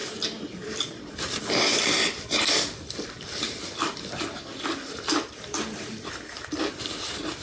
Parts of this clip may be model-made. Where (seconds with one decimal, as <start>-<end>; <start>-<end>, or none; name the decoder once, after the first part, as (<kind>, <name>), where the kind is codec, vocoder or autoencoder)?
0.0-7.4 (vocoder, BigVGAN v2)